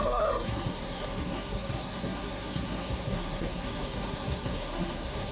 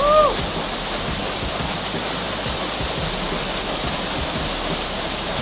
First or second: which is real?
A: second